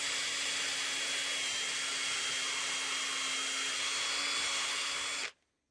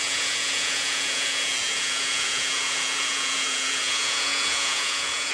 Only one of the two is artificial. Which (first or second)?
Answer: second